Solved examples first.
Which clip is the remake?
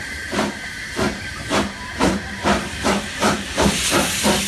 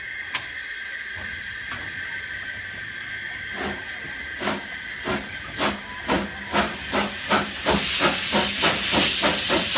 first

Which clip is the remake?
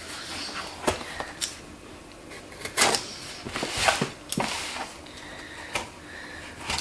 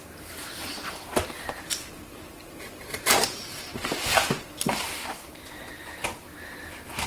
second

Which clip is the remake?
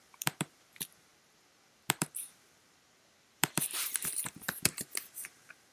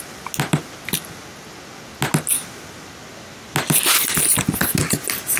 first